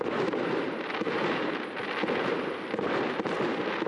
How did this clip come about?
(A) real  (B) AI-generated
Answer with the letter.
A